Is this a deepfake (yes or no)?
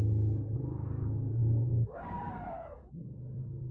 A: yes